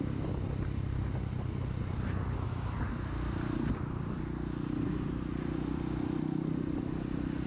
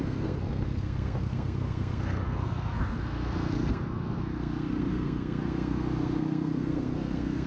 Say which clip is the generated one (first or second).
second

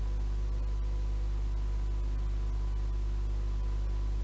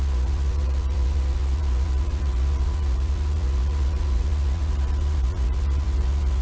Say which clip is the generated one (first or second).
second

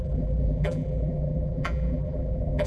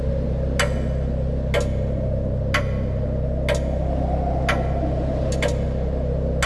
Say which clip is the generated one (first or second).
first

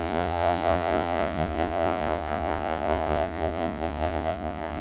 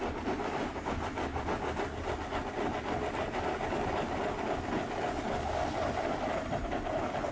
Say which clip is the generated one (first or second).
first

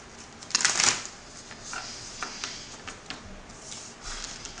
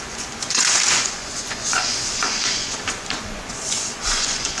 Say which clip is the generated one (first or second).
second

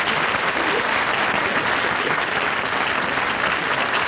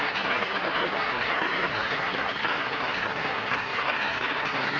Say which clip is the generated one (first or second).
second